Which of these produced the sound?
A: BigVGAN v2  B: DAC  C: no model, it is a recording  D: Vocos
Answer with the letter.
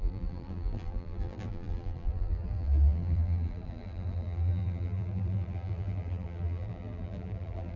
A